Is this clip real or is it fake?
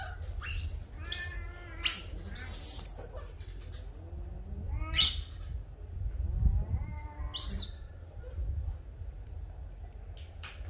real